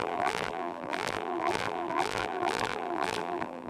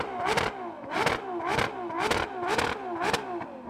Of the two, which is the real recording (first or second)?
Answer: second